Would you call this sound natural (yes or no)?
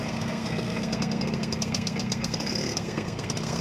no